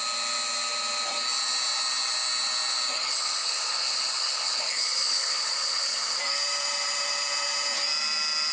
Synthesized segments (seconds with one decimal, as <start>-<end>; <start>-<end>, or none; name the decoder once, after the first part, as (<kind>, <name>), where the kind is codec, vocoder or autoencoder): 3.0-6.2 (codec, HILCodec)